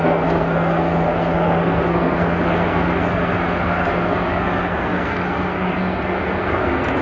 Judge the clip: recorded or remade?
remade